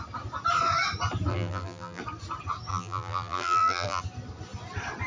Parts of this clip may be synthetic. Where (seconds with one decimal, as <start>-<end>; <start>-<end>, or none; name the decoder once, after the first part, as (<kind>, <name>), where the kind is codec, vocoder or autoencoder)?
1.3-2.0 (vocoder, BigVGAN v2); 2.7-4.0